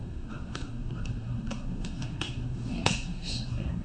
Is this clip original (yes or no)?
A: no